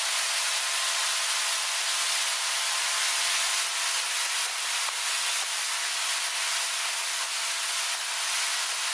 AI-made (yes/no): no